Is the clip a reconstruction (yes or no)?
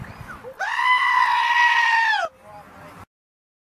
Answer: no